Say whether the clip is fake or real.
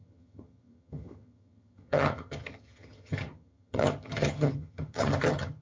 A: fake